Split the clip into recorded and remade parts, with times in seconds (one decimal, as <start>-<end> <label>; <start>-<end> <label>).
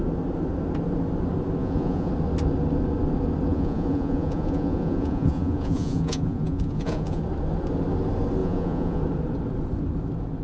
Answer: 0.0-1.6 recorded; 1.6-2.1 remade; 2.1-3.5 recorded; 3.5-7.2 remade; 7.2-8.4 recorded; 8.4-9.0 remade; 9.0-10.4 recorded